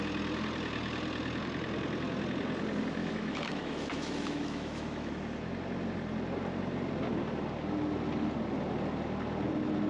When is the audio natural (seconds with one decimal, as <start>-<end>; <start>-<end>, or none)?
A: 0.0-3.0; 5.1-9.9